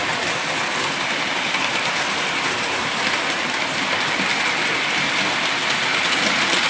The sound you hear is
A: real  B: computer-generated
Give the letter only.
B